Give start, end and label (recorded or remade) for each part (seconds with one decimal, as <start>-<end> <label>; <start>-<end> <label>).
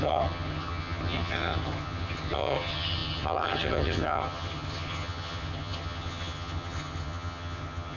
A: 0.0-8.0 remade